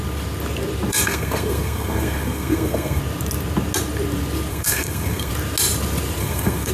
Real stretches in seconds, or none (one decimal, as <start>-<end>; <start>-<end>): 0.0-0.9; 3.0-4.5; 5.3-6.2